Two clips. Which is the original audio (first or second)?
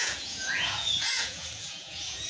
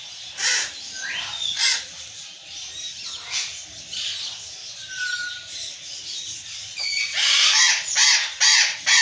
second